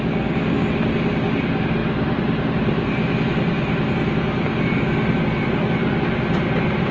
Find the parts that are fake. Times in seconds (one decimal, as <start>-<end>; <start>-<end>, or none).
none